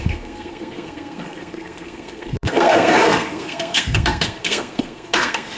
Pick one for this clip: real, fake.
fake